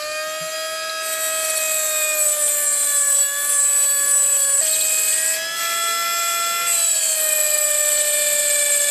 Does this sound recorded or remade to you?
recorded